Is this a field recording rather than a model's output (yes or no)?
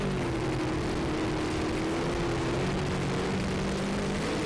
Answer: yes